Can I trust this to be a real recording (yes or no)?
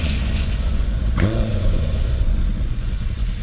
no